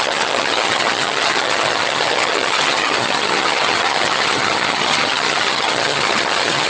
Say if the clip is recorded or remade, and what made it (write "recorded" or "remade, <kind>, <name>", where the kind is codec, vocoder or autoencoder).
remade, vocoder, HiFi-GAN